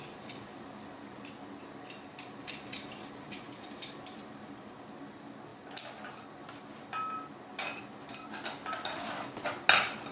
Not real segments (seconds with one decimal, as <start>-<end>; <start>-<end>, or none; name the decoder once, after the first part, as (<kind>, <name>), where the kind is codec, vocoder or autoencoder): none